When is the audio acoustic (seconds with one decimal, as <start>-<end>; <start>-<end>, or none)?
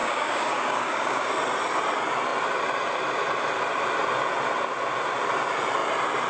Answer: 1.3-6.3